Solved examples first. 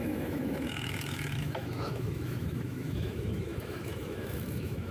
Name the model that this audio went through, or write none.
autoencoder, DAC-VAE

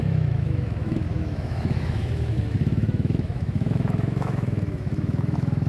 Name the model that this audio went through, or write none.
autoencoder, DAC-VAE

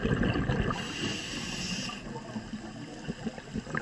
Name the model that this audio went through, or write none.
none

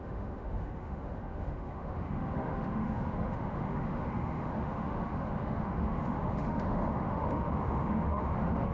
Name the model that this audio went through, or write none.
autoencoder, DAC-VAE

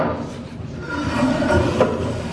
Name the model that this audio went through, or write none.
none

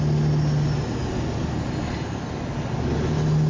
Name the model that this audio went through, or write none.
none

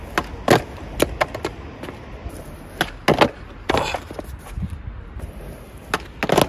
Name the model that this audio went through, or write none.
none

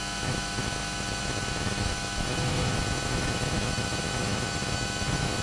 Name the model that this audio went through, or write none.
autoencoder, DAC-VAE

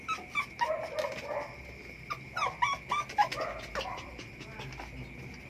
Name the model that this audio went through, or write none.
none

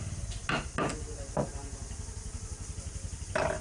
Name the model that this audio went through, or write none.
none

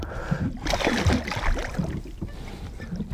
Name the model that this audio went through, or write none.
none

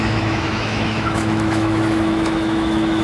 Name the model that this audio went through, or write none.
autoencoder, DAC-VAE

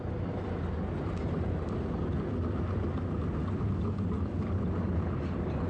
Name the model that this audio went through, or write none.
none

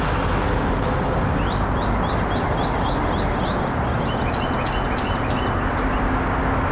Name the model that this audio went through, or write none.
none